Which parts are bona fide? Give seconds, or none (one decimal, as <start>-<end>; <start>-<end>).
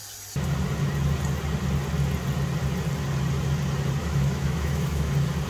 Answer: 0.0-4.0; 5.1-5.5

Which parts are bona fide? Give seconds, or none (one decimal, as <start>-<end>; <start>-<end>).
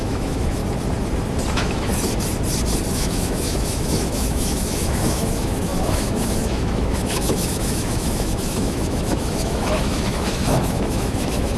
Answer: 0.6-1.5; 1.9-2.9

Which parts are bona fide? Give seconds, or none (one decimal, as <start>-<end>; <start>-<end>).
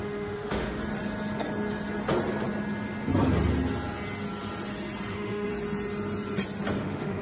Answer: 0.8-5.1; 5.5-6.8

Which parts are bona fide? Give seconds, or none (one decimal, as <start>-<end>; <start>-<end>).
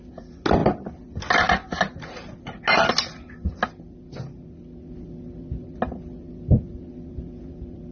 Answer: 0.0-7.9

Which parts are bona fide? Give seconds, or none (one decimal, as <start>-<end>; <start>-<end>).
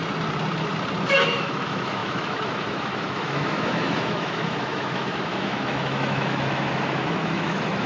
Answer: 0.0-1.1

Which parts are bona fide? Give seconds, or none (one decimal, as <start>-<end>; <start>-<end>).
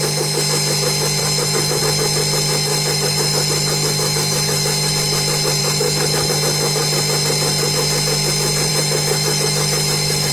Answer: 0.0-1.2; 1.8-2.7; 4.9-5.6; 6.3-8.7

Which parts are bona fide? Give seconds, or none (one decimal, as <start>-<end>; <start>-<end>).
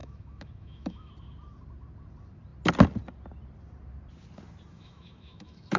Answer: 1.1-4.7